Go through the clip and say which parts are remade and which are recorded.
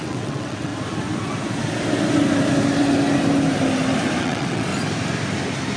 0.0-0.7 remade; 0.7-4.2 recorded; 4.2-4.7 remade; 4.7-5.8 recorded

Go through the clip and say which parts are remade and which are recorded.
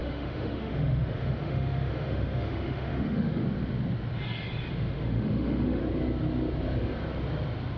0.0-3.4 remade; 3.4-4.7 recorded; 4.7-5.8 remade; 5.8-7.8 recorded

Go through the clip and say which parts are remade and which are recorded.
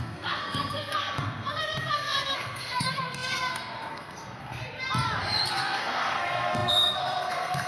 0.0-4.6 remade; 4.6-5.5 recorded; 5.5-7.7 remade